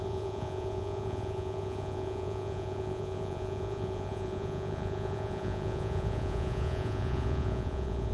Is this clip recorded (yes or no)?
no